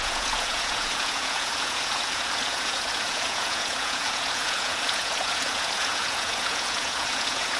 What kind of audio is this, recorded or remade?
remade